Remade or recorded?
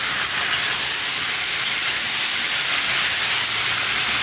recorded